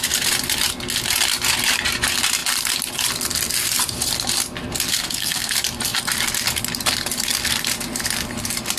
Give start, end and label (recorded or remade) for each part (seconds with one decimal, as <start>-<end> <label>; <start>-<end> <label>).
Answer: 0.0-4.9 recorded; 4.9-5.5 remade; 5.5-8.8 recorded

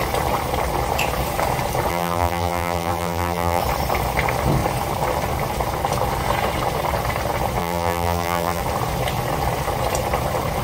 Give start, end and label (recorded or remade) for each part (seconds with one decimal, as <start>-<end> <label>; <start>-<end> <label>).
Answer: 0.0-1.9 recorded; 1.9-3.6 remade; 3.6-7.6 recorded; 7.6-8.6 remade; 8.6-10.6 recorded